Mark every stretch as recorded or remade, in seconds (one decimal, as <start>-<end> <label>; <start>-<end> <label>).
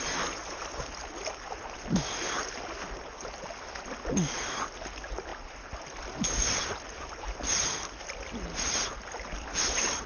0.0-10.1 recorded